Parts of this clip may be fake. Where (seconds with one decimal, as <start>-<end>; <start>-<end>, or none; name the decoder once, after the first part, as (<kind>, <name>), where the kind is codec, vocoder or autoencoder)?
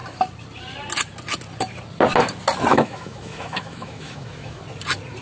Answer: 2.7-4.6 (autoencoder, DAC-VAE)